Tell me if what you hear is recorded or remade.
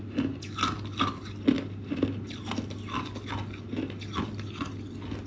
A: recorded